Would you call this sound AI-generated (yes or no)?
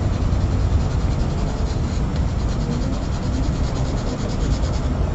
no